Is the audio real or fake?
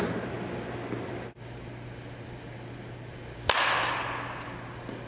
real